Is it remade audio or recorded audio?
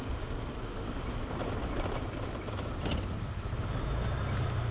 recorded